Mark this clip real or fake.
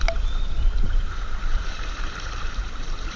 fake